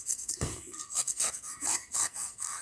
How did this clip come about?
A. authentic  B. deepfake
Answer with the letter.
B